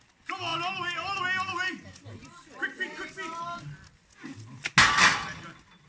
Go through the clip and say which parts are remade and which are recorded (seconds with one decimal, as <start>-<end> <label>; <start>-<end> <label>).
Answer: 0.0-5.9 recorded